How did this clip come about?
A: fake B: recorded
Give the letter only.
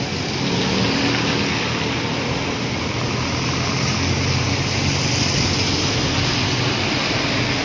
B